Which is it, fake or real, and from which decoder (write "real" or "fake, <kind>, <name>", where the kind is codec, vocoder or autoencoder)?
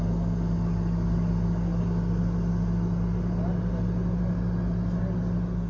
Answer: real